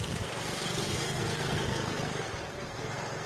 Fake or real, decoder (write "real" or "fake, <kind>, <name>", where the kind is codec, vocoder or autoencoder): fake, codec, SNAC